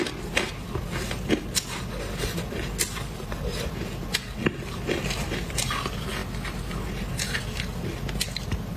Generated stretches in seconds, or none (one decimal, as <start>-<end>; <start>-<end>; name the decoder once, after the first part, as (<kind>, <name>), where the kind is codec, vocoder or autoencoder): none